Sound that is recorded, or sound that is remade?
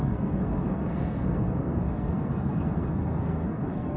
remade